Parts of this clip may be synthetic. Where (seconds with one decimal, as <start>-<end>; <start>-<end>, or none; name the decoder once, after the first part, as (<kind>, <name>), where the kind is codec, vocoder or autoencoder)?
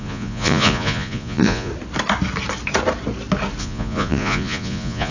0.0-1.7 (vocoder, Vocos); 3.6-5.1